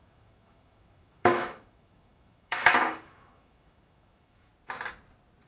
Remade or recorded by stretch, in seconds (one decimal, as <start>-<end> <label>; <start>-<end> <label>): 0.0-4.5 remade; 4.5-5.5 recorded